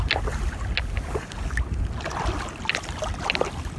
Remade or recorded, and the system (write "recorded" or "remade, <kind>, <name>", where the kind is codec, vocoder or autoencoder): recorded